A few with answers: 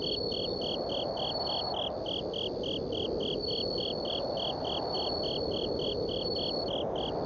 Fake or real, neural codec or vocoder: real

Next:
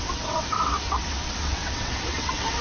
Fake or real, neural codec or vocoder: fake, vocoder, WaveNeXt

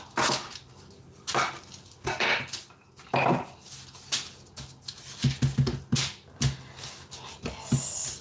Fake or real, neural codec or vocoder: real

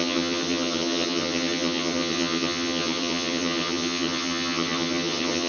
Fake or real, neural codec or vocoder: fake, vocoder, HiFi-GAN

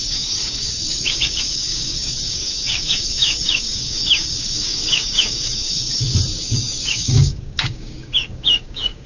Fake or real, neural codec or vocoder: fake, codec, DAC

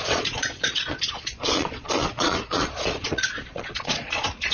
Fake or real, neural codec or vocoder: fake, vocoder, Vocos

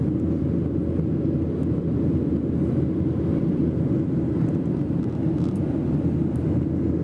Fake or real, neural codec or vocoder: fake, vocoder, BigVGAN v2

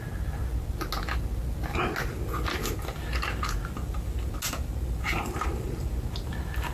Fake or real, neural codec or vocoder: real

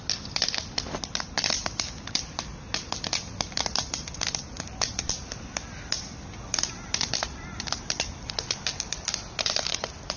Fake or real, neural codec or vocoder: real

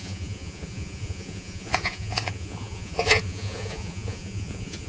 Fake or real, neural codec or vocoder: fake, vocoder, Vocos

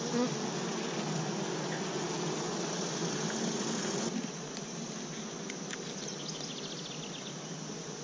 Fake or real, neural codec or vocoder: real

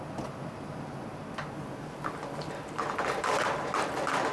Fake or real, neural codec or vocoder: real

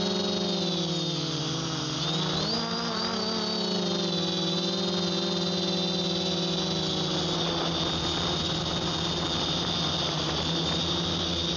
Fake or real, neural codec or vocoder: real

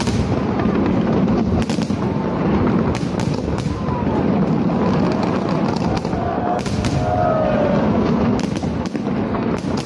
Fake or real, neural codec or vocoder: real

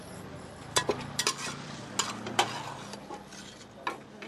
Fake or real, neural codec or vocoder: real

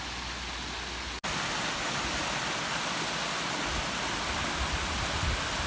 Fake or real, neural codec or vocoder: real